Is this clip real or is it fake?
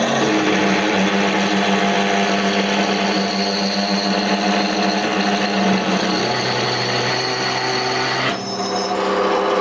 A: real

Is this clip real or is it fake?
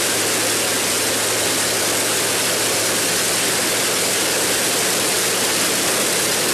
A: real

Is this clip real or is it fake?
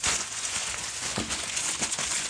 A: fake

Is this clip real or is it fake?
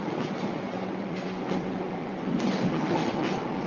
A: fake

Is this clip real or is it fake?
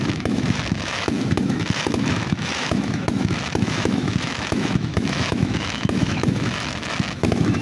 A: fake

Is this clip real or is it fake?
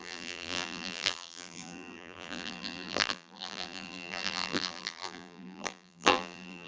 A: fake